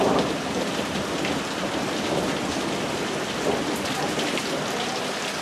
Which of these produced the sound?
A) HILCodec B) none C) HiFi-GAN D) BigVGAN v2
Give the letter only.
B